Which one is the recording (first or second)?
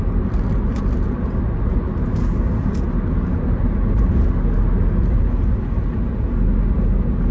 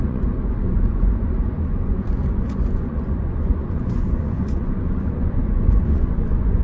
first